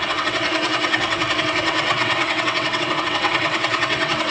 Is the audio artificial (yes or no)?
yes